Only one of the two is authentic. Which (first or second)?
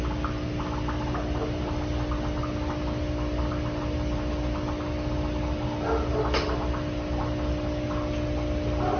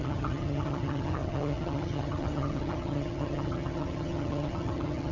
first